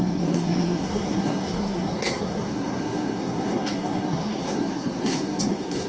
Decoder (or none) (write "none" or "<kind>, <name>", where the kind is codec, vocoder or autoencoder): codec, SNAC